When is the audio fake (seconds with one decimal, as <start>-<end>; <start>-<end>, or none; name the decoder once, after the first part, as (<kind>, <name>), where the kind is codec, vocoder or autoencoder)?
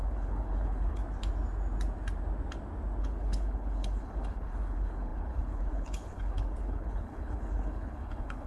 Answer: 0.0-1.0 (codec, HILCodec); 3.0-8.5